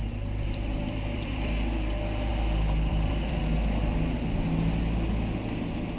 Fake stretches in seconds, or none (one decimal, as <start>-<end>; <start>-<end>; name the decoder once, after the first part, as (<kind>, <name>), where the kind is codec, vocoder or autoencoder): 0.0-2.3 (vocoder, BigVGAN v2); 2.9-3.4